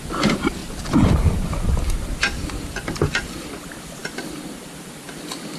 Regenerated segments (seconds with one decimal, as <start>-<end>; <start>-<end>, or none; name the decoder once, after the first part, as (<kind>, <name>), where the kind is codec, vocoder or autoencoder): 0.0-5.6 (vocoder, BigVGAN v2)